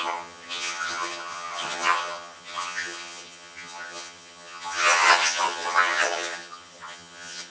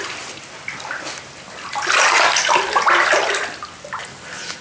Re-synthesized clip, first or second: first